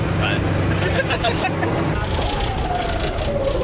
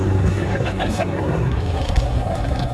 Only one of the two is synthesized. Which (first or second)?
second